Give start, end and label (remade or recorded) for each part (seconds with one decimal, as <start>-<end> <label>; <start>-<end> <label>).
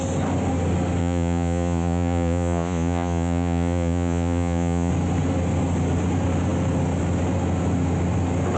0.0-1.0 recorded; 1.0-4.9 remade; 4.9-8.6 recorded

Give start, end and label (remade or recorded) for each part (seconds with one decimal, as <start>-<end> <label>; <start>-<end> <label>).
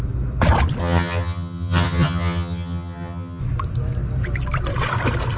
0.0-0.8 recorded; 0.8-3.4 remade; 3.4-5.4 recorded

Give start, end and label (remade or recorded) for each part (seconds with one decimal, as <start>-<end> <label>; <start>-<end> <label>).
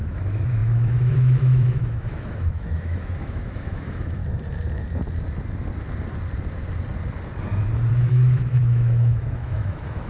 0.0-4.2 remade; 4.2-7.9 recorded; 7.9-10.1 remade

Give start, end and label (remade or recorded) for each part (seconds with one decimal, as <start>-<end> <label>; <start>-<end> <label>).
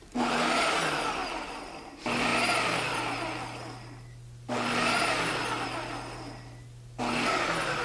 0.0-7.8 recorded